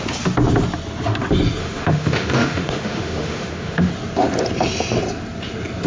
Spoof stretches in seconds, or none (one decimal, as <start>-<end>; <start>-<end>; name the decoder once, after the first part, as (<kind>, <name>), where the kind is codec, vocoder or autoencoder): 1.6-3.9 (autoencoder, DAC-VAE)